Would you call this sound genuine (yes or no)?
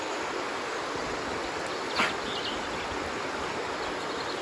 yes